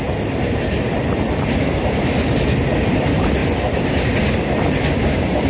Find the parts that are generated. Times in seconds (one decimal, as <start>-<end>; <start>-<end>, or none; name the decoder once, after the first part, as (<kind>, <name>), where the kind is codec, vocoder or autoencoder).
none